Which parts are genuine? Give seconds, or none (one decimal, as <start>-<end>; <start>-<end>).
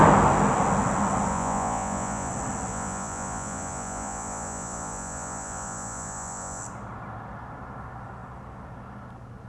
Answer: 0.0-1.3; 2.3-2.7; 6.6-9.5